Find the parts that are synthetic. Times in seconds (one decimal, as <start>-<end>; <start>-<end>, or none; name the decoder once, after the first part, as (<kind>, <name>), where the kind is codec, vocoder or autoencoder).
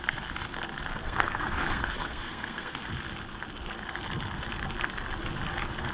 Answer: 1.0-2.8 (codec, SNAC)